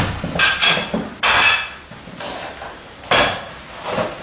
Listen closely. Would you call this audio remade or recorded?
recorded